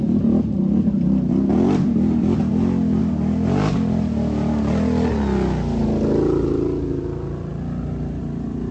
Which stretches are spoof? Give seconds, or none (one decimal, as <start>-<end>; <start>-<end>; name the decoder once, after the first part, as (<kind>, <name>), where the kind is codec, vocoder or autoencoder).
none